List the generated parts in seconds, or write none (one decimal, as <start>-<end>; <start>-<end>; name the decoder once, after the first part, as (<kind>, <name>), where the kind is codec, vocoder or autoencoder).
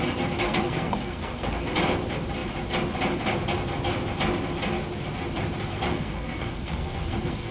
0.4-1.7 (codec, SNAC); 5.7-7.5